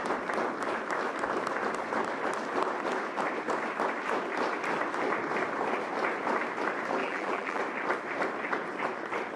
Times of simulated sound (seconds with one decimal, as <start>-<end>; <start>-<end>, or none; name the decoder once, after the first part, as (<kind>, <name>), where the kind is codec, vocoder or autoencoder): 7.0-7.6 (vocoder, BigVGAN v2)